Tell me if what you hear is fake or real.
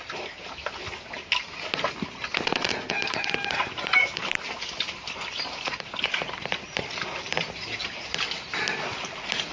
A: real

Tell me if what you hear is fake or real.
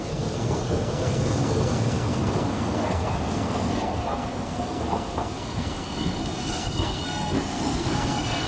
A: fake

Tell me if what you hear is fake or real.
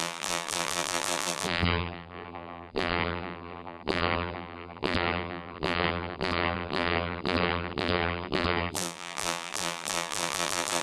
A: fake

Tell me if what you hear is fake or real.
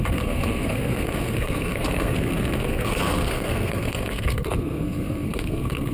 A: fake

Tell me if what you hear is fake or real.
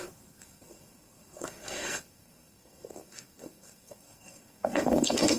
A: fake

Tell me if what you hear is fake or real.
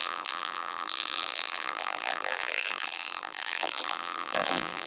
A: fake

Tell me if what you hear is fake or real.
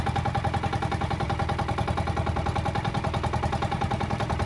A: real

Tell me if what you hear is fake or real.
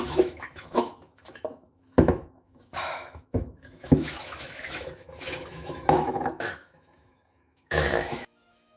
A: fake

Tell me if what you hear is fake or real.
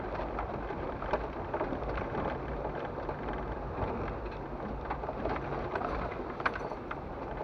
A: real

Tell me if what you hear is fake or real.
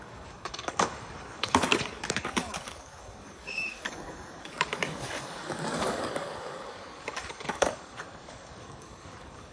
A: fake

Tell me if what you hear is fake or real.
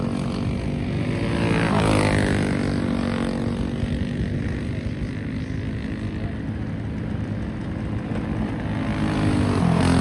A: real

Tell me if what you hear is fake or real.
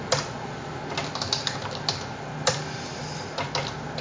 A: real